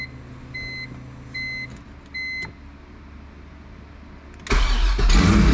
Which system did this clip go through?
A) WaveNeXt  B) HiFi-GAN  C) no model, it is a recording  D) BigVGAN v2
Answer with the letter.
C